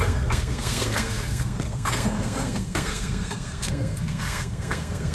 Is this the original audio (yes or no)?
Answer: no